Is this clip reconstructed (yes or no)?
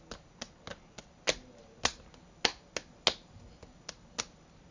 no